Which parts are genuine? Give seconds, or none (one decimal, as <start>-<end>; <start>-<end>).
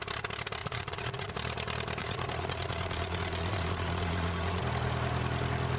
0.0-0.6; 1.3-2.0; 4.6-5.8